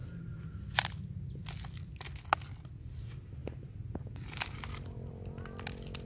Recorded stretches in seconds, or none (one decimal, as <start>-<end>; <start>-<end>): 0.0-6.1